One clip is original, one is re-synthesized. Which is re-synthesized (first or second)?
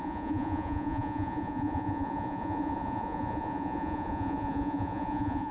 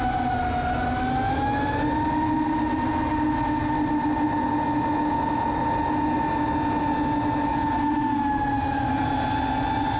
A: first